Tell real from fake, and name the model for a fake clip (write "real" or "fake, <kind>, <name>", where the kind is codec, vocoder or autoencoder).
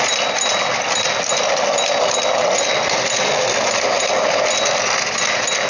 real